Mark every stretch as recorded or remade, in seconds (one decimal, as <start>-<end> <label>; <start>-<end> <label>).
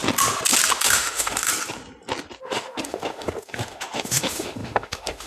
0.0-0.8 recorded; 0.8-1.5 remade; 1.5-2.4 recorded; 2.4-5.3 remade